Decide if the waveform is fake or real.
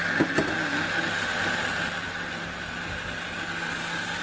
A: real